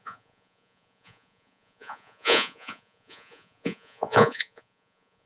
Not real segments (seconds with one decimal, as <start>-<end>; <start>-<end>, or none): 0.0-5.3